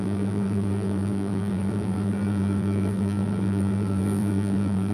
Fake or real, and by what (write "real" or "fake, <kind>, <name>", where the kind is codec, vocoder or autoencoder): fake, vocoder, BigVGAN v2